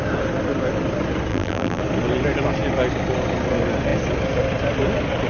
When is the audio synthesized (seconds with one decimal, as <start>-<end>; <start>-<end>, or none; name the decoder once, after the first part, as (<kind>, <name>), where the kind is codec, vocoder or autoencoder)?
1.3-1.8 (vocoder, BigVGAN v2)

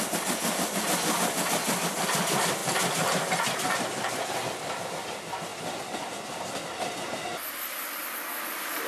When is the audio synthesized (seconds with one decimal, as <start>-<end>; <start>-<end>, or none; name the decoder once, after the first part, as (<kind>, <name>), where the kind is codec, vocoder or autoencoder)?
0.0-2.6 (vocoder, BigVGAN v2); 4.9-5.5; 7.8-8.9

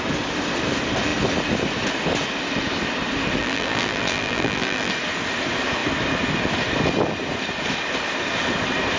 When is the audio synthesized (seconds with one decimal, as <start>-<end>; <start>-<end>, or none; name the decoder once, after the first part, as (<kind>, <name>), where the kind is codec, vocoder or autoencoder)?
3.4-4.9 (vocoder, BigVGAN v2)

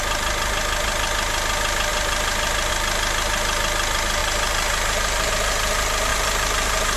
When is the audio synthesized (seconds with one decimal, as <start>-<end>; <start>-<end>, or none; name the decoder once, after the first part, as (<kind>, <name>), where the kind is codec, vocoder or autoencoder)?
1.9-2.7 (vocoder, BigVGAN v2); 4.2-5.3; 6.1-7.0

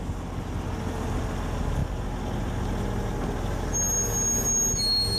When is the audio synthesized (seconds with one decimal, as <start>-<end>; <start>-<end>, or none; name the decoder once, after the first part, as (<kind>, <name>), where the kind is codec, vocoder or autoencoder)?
none

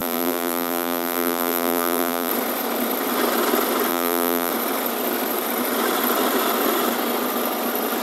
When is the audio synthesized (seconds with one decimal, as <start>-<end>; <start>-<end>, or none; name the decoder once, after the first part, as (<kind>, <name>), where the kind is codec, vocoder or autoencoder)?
0.0-2.3 (vocoder, BigVGAN v2); 3.9-4.5

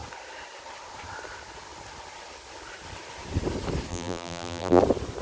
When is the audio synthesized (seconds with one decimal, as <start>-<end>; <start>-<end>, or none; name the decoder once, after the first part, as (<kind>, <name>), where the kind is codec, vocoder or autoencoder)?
3.9-4.8 (vocoder, BigVGAN v2)

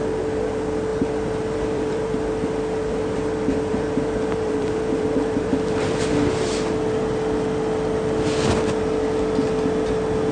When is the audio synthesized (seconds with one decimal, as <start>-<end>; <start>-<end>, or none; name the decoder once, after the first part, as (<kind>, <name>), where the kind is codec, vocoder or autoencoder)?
0.9-6.0 (vocoder, BigVGAN v2)